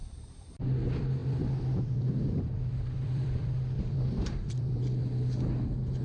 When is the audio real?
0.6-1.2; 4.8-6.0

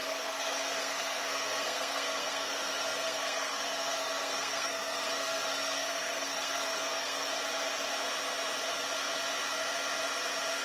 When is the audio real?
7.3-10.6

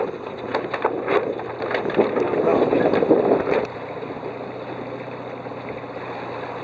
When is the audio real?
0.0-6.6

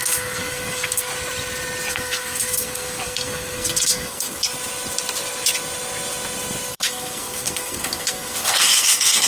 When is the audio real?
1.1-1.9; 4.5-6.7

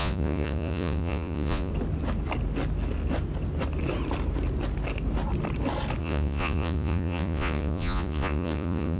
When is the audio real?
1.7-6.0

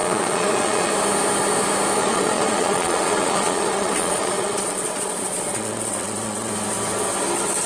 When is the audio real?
0.9-2.0; 6.5-7.7

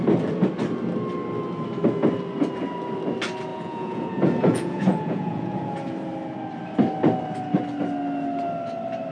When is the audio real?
0.0-3.5; 5.7-9.1

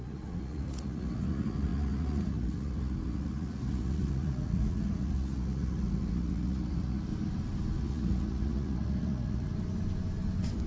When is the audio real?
7.1-7.8; 9.5-10.7